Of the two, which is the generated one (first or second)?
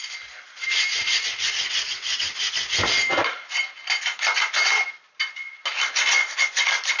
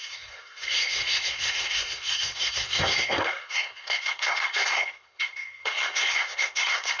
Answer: second